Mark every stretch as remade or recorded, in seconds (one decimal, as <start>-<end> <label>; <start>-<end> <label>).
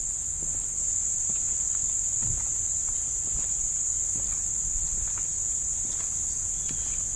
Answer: 0.0-0.5 recorded; 0.5-3.3 remade; 3.3-7.2 recorded